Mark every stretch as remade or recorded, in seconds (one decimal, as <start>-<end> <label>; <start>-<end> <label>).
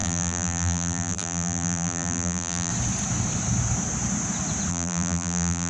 0.0-2.7 remade; 2.7-4.7 recorded; 4.7-5.7 remade